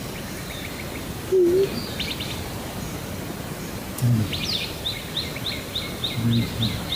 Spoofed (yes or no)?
no